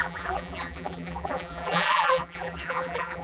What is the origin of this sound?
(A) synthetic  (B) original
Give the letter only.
A